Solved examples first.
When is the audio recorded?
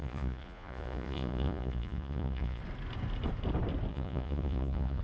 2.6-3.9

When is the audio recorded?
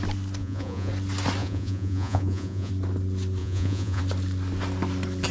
0.0-0.4; 0.9-1.4; 2.7-3.4; 4.0-5.3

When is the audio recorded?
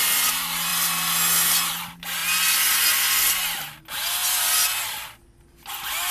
0.0-6.1